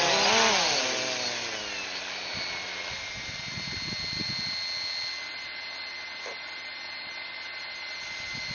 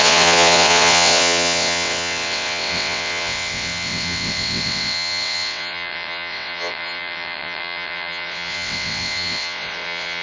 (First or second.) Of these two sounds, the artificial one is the second